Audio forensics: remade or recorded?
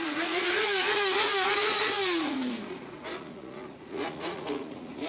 remade